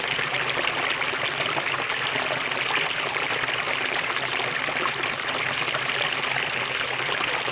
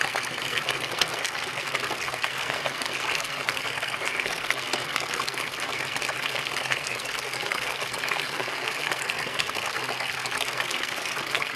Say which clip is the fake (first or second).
second